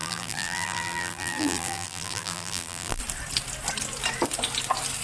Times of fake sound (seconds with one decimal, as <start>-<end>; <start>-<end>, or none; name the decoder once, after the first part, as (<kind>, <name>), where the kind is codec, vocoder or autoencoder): 0.0-3.0 (vocoder, BigVGAN v2)